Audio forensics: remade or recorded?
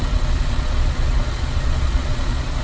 remade